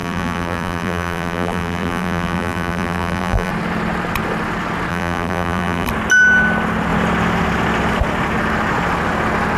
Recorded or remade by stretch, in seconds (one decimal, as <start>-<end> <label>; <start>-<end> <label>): 0.0-3.5 remade; 3.5-4.9 recorded; 4.9-5.9 remade; 5.9-9.6 recorded